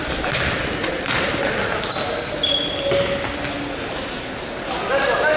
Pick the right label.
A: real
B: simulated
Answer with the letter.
A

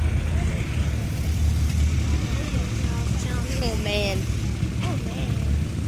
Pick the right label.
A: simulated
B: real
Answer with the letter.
B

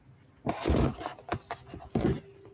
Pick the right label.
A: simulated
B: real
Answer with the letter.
B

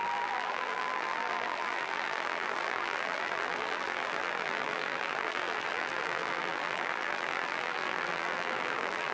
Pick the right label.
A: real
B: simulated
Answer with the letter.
B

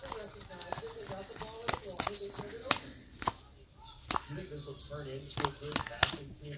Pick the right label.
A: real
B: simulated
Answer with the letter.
A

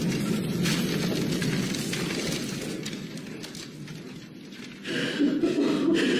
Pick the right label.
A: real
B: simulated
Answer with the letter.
A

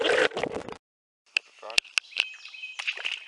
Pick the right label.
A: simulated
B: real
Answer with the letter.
B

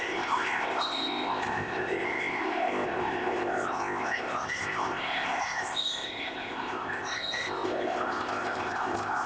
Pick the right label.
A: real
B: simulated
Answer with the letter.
B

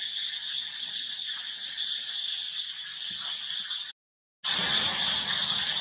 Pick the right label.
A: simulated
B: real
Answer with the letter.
B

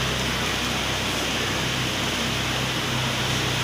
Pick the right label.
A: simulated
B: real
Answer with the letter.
B